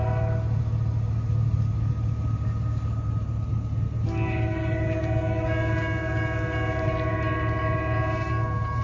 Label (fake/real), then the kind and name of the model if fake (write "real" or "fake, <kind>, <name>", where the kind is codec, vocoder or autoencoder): real